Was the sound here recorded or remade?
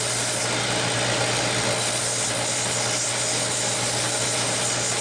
recorded